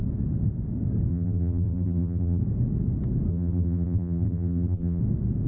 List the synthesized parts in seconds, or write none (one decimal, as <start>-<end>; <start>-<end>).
1.1-2.4; 3.3-5.0